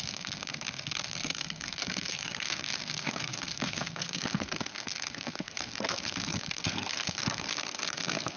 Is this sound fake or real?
fake